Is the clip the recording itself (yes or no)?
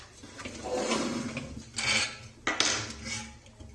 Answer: yes